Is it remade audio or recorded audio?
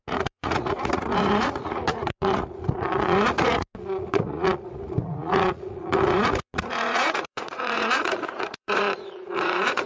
remade